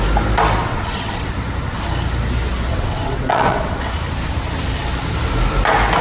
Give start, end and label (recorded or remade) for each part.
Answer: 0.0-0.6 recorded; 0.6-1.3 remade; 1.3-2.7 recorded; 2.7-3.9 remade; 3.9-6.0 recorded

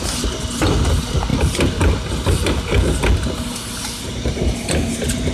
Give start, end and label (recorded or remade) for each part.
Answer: 0.0-5.3 recorded

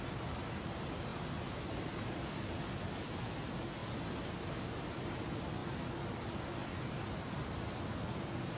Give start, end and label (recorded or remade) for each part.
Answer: 0.0-8.6 recorded

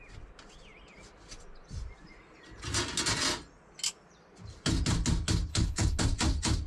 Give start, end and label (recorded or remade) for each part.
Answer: 0.0-5.5 recorded; 5.5-6.0 remade; 6.0-6.7 recorded

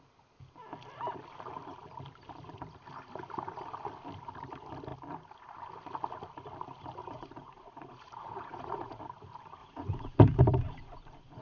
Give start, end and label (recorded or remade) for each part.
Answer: 0.0-7.0 recorded; 7.0-9.0 remade; 9.0-9.6 recorded; 9.6-10.4 remade; 10.4-11.4 recorded

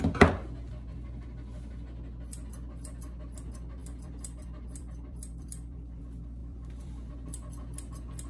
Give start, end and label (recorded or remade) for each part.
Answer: 0.0-3.8 recorded; 3.8-6.0 remade; 6.0-6.4 recorded; 6.4-7.1 remade; 7.1-8.3 recorded

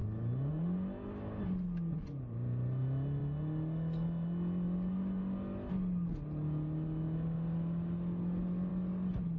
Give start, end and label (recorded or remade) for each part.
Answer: 0.0-9.4 recorded